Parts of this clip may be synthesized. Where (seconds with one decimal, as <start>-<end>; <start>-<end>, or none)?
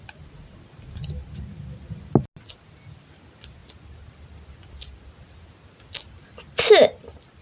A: none